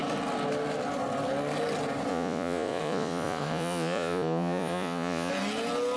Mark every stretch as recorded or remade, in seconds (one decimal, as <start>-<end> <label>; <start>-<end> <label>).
0.0-2.1 recorded; 2.1-5.3 remade; 5.3-6.0 recorded